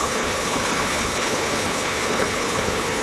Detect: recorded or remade remade